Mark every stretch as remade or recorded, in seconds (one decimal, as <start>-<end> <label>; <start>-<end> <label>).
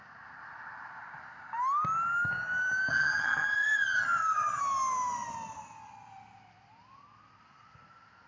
0.0-2.9 recorded; 2.9-4.6 remade; 4.6-8.3 recorded